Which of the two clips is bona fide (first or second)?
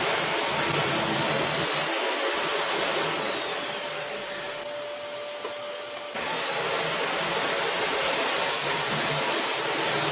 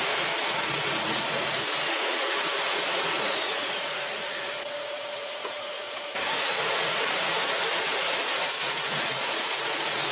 first